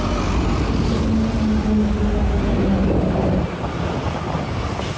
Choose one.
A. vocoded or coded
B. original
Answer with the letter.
B